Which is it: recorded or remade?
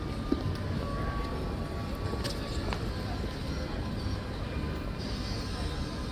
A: recorded